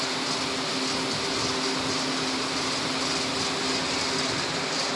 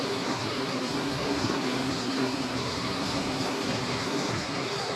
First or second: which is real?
first